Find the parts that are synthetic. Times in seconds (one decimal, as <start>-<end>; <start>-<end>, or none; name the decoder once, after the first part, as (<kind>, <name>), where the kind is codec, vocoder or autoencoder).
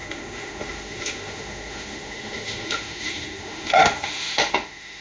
0.0-5.0 (autoencoder, DAC-VAE)